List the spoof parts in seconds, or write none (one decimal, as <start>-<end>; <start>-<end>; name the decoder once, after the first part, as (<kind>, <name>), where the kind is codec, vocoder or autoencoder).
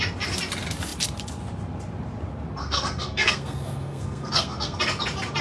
2.6-4.8 (codec, SNAC)